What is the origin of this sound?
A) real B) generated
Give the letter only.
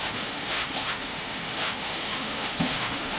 B